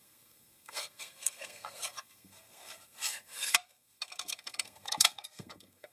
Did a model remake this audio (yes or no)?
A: yes